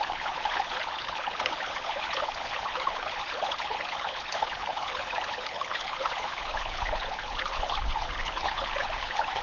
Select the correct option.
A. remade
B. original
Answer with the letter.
A